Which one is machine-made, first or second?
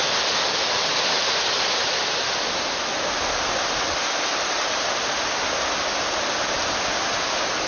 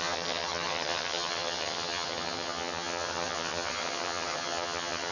second